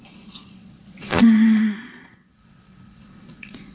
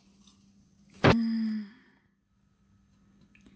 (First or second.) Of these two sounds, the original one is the second